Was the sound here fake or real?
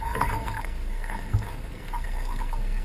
fake